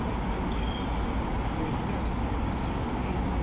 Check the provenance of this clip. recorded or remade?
recorded